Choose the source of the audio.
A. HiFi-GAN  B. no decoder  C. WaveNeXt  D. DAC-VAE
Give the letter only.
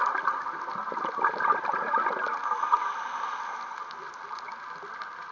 B